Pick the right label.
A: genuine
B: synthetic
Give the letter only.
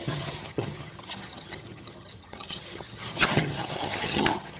B